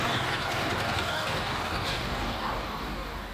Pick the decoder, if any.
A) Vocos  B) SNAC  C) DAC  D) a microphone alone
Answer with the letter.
C